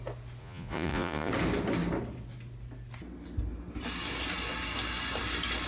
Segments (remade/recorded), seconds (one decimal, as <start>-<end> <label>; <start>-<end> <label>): 0.0-0.4 recorded; 0.4-1.3 remade; 1.3-5.7 recorded